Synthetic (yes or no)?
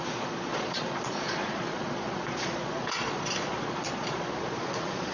yes